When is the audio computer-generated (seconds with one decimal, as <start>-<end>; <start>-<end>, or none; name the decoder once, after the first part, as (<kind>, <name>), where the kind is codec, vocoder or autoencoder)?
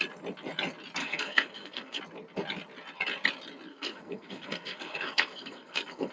1.0-2.0 (codec, SNAC); 3.7-6.1